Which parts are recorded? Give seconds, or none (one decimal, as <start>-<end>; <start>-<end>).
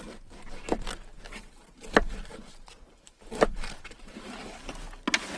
0.0-1.4; 4.6-5.4